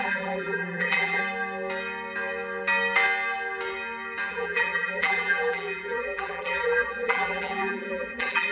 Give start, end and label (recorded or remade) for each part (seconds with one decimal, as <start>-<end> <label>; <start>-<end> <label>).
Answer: 0.0-1.2 remade; 1.2-4.3 recorded; 4.3-8.5 remade